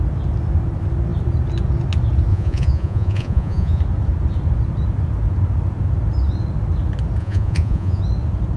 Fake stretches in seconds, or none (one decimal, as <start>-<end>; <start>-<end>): 2.3-3.8; 7.2-8.0